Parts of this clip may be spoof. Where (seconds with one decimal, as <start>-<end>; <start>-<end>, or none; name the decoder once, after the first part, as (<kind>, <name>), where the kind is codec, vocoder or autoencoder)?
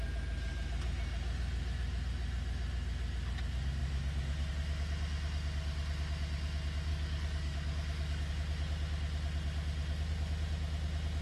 6.9-8.3 (codec, DAC)